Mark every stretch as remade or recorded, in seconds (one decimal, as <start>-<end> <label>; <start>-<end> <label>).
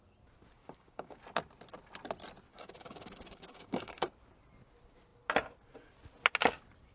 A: 0.0-0.6 recorded; 0.6-1.2 remade; 1.2-2.5 recorded; 2.5-4.1 remade; 4.1-6.9 recorded